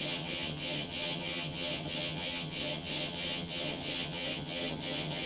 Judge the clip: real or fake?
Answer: fake